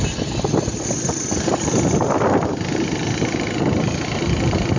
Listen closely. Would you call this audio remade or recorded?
recorded